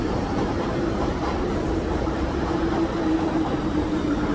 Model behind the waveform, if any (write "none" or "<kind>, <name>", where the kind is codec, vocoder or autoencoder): vocoder, BigVGAN v2